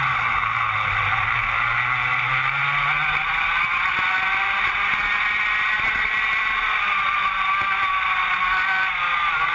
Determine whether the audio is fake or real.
real